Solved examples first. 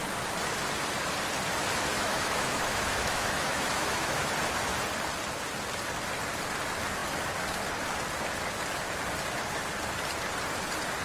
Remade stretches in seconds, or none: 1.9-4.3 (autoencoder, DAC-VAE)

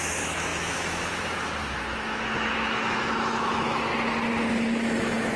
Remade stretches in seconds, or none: 0.0-3.9 (autoencoder, DAC-VAE); 4.5-5.4

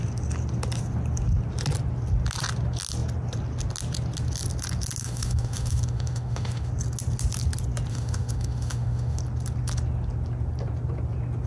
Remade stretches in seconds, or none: 5.0-6.7 (autoencoder, DAC-VAE); 7.9-9.2

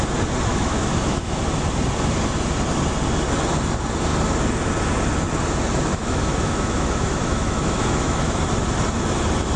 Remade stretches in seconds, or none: 0.5-1.4 (autoencoder, DAC-VAE); 5.9-8.4

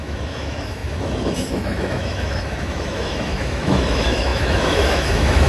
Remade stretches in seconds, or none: 0.0-5.5 (autoencoder, DAC-VAE)

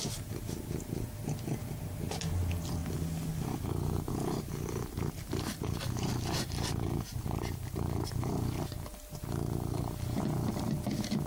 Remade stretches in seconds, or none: none